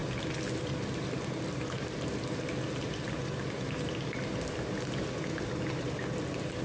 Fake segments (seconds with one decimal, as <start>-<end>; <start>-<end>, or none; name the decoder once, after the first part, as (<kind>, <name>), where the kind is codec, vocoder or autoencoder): none